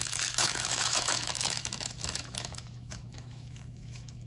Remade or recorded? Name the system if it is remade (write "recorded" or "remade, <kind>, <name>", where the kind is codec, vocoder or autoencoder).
remade, autoencoder, DAC-VAE